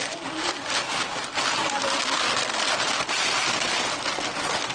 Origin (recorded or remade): recorded